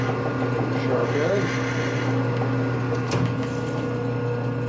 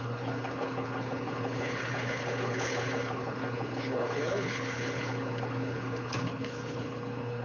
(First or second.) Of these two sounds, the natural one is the first